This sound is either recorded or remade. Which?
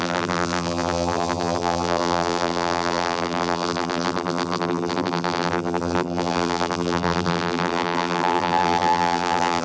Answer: remade